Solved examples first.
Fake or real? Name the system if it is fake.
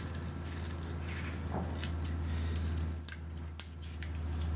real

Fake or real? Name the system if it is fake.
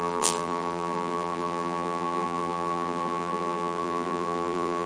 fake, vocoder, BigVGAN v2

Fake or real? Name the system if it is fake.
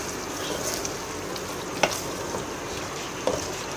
real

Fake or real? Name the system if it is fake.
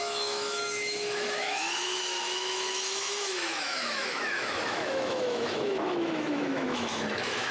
fake, autoencoder, DAC-VAE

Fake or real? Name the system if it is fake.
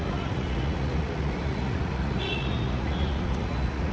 fake, vocoder, Vocos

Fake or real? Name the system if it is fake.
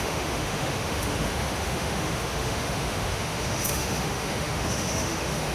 fake, autoencoder, DAC-VAE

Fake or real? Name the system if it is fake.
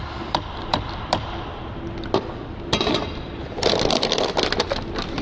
fake, vocoder, BigVGAN v2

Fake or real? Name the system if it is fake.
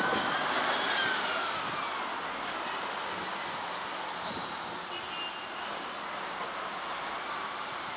real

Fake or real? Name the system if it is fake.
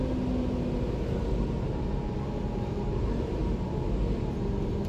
real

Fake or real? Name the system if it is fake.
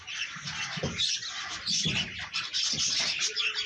real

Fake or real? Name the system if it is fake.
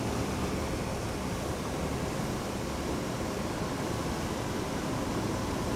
real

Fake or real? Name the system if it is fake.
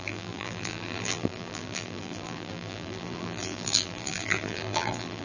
fake, vocoder, BigVGAN v2